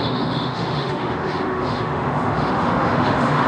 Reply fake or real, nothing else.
fake